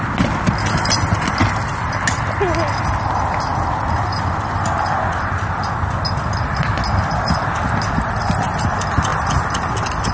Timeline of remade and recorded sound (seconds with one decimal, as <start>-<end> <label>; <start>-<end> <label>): 0.0-10.1 recorded